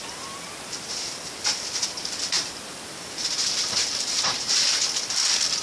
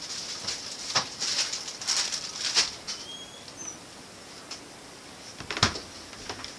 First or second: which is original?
second